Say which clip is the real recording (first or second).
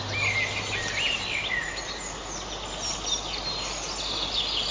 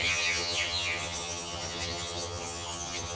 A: first